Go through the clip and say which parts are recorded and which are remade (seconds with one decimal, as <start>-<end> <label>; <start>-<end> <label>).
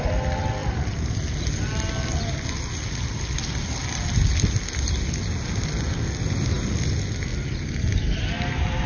0.0-8.9 recorded